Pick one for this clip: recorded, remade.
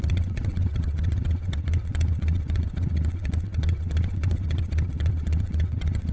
remade